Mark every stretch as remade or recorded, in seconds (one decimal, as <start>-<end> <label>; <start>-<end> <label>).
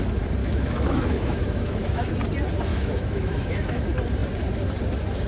0.0-0.4 recorded; 0.4-2.1 remade; 2.1-2.7 recorded; 2.7-3.8 remade; 3.8-5.3 recorded